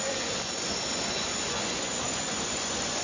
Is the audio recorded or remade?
remade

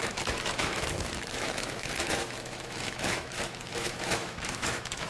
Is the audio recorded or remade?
remade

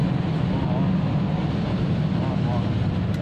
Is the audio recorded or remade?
recorded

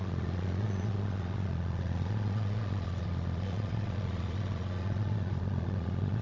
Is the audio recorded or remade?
remade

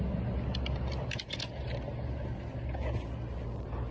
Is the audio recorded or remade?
recorded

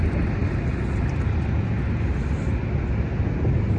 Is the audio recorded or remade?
recorded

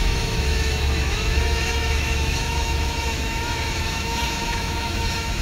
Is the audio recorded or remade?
remade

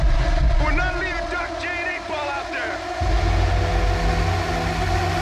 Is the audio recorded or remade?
recorded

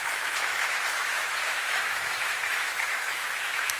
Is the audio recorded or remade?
remade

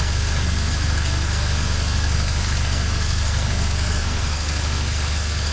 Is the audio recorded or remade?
remade